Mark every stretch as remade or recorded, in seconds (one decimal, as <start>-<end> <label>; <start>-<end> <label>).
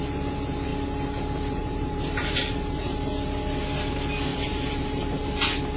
0.0-1.6 recorded; 1.6-3.1 remade; 3.1-4.3 recorded; 4.3-5.2 remade; 5.2-5.8 recorded